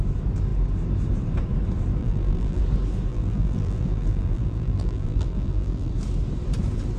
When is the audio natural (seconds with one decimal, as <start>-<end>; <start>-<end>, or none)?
0.0-2.0; 2.6-3.1; 5.9-7.0